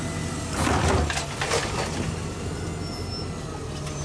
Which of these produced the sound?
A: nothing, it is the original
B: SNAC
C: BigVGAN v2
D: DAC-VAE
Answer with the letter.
A